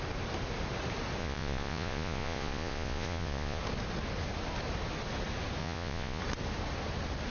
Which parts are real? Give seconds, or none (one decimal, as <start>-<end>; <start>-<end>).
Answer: 0.0-1.2; 3.6-5.6; 6.2-7.3